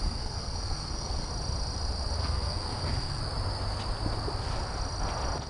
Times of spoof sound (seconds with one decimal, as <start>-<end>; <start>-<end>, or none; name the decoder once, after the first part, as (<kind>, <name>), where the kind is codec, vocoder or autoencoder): 0.0-1.3 (codec, SNAC); 2.2-3.2

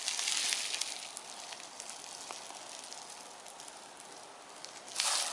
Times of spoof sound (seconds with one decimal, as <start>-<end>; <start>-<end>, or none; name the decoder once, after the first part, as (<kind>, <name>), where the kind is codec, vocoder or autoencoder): none

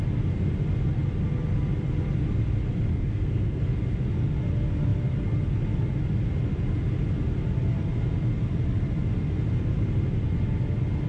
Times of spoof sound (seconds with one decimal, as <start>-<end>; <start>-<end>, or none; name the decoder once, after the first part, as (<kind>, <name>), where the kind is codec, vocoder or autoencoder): 2.9-3.6 (codec, SNAC)

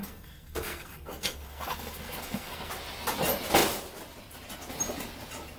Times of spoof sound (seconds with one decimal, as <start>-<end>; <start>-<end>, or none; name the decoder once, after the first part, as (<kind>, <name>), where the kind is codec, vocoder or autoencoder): 0.0-2.7 (codec, SNAC)

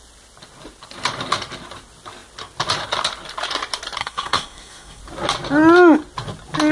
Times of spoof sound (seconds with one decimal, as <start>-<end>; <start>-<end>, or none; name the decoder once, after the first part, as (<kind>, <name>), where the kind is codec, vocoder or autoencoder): 4.0-5.0 (codec, SNAC)

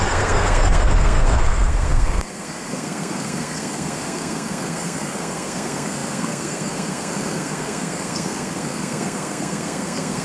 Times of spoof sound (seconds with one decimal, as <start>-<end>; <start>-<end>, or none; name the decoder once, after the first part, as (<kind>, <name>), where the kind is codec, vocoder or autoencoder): 0.0-10.2 (codec, SNAC)

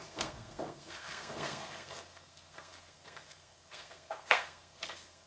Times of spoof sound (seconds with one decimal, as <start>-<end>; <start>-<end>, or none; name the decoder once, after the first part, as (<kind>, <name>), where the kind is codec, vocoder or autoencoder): 0.0-5.3 (codec, SNAC)

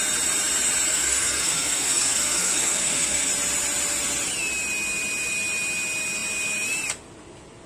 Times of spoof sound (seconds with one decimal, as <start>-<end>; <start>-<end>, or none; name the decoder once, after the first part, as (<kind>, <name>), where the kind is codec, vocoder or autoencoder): 0.9-3.3 (codec, SNAC)